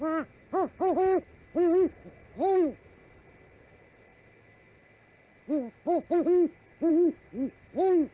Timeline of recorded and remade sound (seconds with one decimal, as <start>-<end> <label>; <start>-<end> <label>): 0.0-8.1 recorded